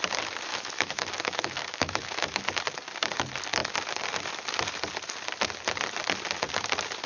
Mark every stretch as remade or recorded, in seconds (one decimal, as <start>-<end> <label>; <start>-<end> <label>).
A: 0.0-0.5 recorded; 0.5-2.6 remade; 2.6-7.1 recorded